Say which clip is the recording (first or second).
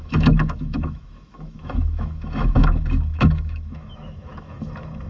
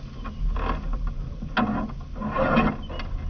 second